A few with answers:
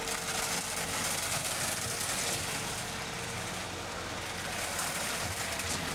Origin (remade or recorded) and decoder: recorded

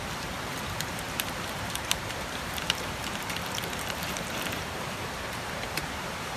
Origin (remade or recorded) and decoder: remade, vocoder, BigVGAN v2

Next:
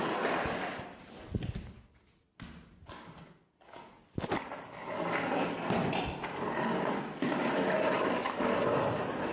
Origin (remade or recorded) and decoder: recorded